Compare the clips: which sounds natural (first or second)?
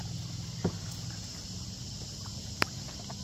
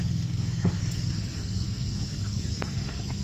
first